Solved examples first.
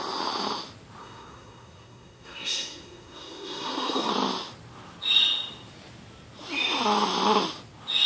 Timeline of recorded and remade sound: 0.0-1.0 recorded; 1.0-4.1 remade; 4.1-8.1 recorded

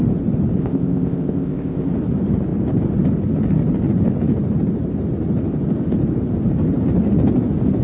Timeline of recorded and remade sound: 0.0-0.6 recorded; 0.6-1.9 remade; 1.9-7.8 recorded

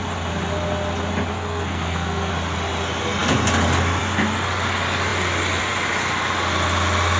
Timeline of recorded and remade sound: 0.0-1.3 recorded; 1.3-2.3 remade; 2.3-7.2 recorded

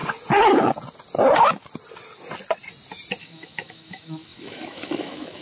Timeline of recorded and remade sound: 0.0-3.2 recorded; 3.2-5.4 remade

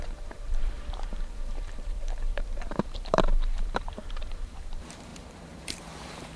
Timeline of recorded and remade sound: 0.0-6.4 remade